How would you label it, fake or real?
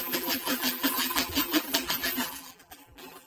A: fake